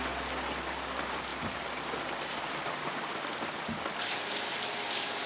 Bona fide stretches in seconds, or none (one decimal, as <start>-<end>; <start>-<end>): 0.0-1.3; 4.5-5.3